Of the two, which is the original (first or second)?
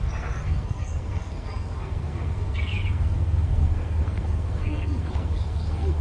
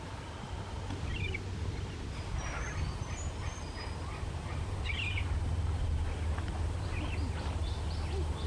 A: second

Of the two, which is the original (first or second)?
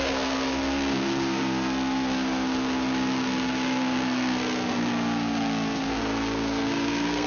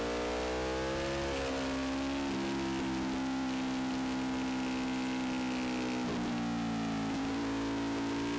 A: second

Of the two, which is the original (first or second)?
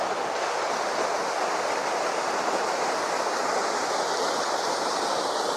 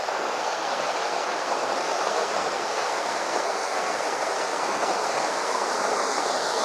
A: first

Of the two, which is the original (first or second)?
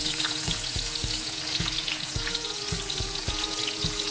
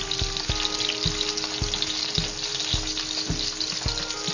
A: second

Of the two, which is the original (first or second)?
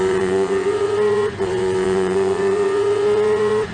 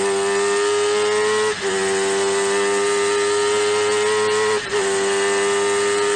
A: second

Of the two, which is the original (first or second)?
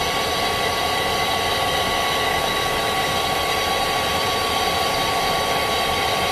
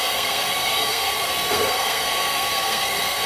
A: first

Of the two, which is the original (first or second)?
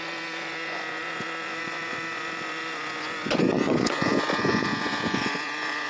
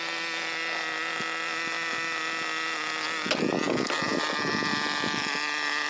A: second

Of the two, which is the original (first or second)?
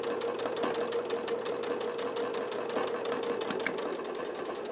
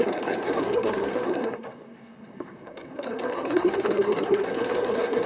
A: first